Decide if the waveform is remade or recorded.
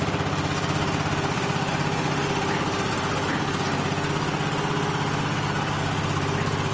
recorded